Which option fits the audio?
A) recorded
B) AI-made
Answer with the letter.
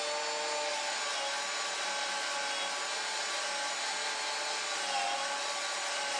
A